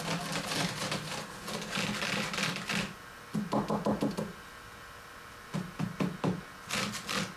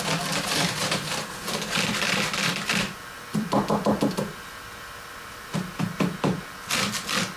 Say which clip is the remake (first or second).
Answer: second